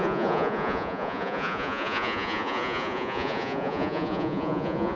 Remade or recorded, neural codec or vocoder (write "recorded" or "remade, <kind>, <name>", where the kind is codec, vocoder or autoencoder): remade, vocoder, Vocos